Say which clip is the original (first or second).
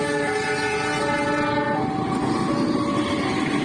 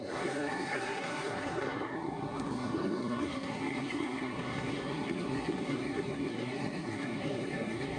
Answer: first